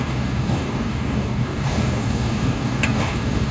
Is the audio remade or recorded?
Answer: remade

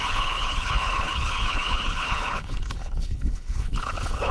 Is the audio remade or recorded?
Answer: remade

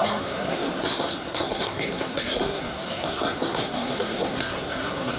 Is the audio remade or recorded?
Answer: remade